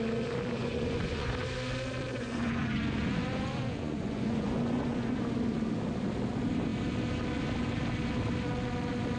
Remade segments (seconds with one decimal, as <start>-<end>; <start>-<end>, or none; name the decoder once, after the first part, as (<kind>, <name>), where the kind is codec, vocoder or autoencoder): 0.6-1.3 (vocoder, Vocos); 2.1-5.2